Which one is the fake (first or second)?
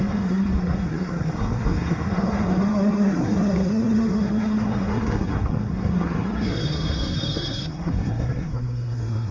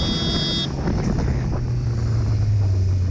first